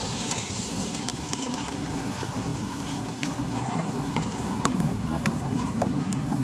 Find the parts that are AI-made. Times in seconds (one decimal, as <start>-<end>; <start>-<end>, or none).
0.0-6.4